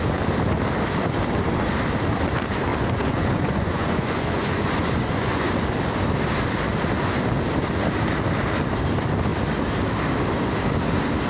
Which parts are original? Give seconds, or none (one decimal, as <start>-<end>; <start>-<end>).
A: 0.0-2.7; 5.5-11.3